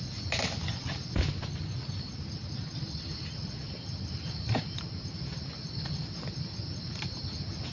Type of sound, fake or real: real